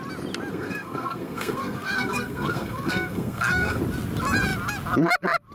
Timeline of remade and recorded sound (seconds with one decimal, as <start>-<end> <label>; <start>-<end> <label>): 0.0-0.5 recorded; 0.5-3.8 remade; 3.8-5.5 recorded